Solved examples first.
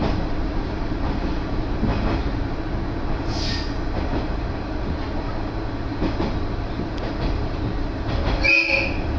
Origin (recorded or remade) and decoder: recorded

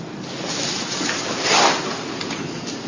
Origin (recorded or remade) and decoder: recorded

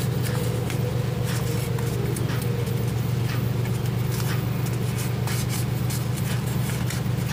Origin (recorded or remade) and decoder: recorded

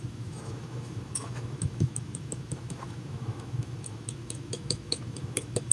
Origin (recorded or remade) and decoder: remade, autoencoder, DAC-VAE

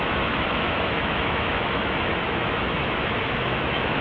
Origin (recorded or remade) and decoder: remade, autoencoder, DAC-VAE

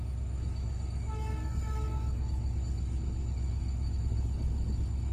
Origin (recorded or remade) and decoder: remade, autoencoder, DAC-VAE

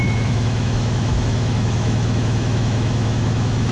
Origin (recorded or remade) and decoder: remade, autoencoder, DAC-VAE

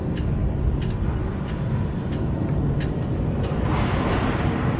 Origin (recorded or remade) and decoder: recorded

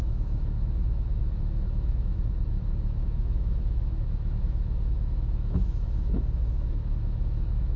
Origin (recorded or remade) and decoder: remade, autoencoder, DAC-VAE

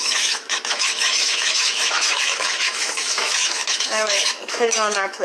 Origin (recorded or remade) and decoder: remade, autoencoder, DAC-VAE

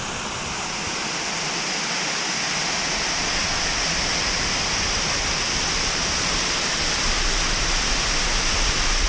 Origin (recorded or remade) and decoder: recorded